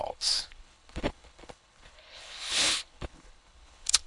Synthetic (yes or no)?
yes